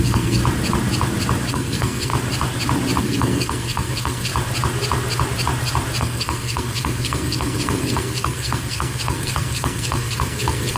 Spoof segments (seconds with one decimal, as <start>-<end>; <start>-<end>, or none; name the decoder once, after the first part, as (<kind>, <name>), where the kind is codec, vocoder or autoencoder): 0.0-0.4 (codec, SNAC); 1.5-2.1; 3.0-4.3; 6.0-10.8